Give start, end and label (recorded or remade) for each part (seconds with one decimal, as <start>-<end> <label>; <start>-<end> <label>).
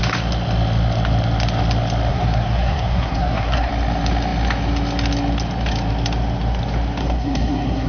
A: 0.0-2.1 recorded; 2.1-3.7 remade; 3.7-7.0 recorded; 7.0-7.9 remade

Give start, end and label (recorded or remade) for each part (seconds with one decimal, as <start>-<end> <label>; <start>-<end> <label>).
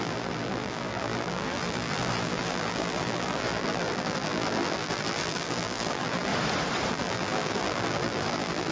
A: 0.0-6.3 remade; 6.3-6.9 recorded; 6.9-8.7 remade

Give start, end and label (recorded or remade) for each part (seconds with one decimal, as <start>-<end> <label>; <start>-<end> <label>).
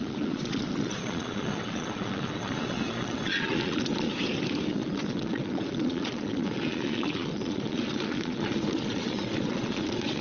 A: 0.0-4.1 remade; 4.1-4.7 recorded; 4.7-10.2 remade